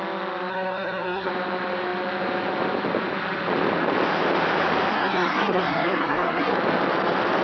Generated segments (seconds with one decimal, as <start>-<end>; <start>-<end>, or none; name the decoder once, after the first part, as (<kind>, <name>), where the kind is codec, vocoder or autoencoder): 0.5-1.3 (codec, SNAC); 4.9-6.5